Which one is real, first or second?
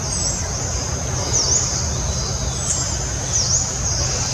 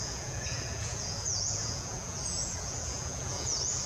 first